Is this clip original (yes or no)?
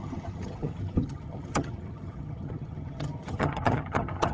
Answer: no